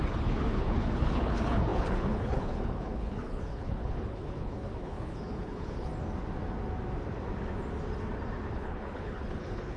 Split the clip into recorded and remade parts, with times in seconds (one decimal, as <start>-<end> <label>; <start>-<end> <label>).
0.0-5.9 remade; 5.9-8.5 recorded; 8.5-9.8 remade